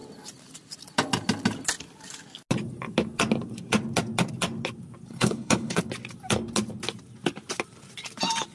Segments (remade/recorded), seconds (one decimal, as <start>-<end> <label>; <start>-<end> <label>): 0.0-5.1 recorded; 5.1-5.8 remade; 5.8-8.5 recorded